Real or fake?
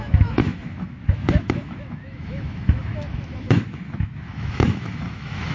fake